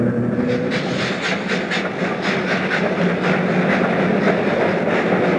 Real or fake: real